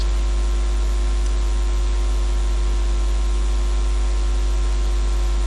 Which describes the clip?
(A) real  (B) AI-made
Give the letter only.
A